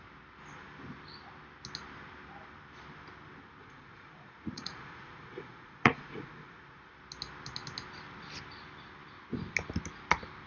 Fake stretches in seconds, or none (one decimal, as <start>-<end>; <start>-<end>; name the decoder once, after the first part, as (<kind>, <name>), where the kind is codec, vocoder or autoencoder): 3.6-6.9 (vocoder, Vocos)